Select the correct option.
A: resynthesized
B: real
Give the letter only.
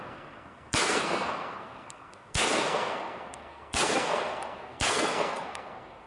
A